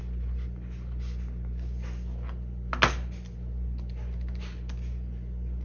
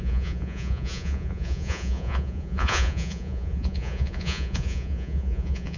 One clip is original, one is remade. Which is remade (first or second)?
second